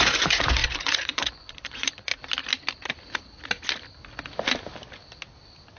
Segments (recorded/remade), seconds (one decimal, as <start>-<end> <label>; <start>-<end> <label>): 0.0-2.1 remade; 2.1-5.8 recorded